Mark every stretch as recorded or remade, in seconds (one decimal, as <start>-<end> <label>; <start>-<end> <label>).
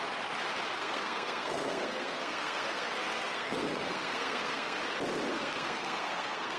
0.0-0.8 recorded; 0.8-4.8 remade; 4.8-5.3 recorded; 5.3-6.6 remade